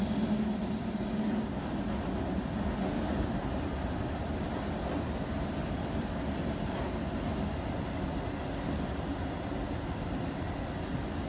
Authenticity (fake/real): real